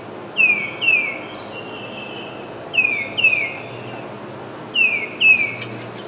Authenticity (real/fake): real